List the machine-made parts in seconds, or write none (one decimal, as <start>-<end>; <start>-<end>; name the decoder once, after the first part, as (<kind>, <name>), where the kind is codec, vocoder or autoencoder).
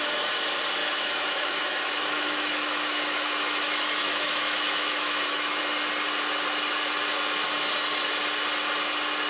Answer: 0.8-5.6 (autoencoder, DAC-VAE)